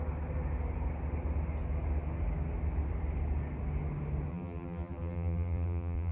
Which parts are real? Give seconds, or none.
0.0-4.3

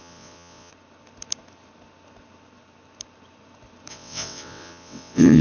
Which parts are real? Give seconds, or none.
0.7-3.9

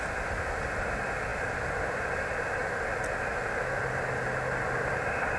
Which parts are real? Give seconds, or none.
0.0-5.4

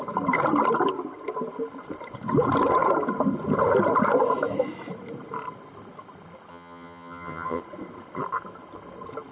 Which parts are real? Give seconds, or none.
0.0-6.5; 7.6-9.3

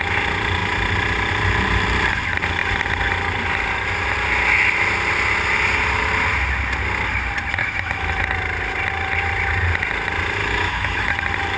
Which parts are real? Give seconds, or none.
0.0-7.6; 8.1-10.4; 11.1-11.6

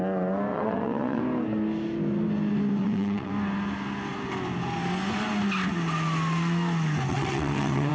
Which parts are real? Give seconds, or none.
0.0-0.5; 1.2-2.8; 3.3-7.1

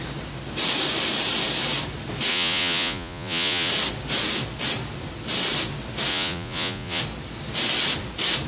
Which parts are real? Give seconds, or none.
0.0-2.3; 3.7-6.1; 7.0-8.5

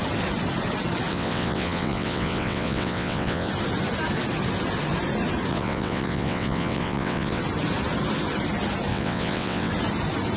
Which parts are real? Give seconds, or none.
0.0-1.1; 3.5-5.5; 7.4-8.9; 9.7-10.4